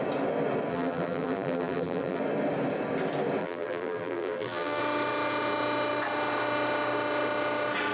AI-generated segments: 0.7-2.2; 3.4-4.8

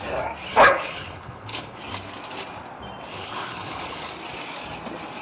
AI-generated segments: 0.5-1.8; 3.1-4.1

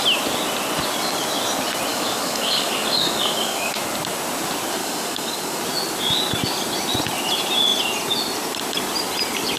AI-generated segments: 1.9-3.7; 4.8-5.6

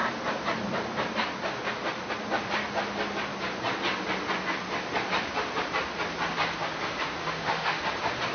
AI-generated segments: 7.2-7.8

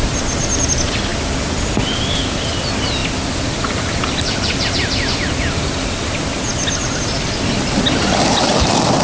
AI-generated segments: none

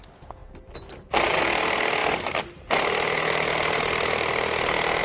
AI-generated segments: none

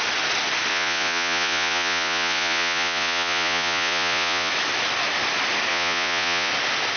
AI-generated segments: 0.7-4.5; 5.7-6.5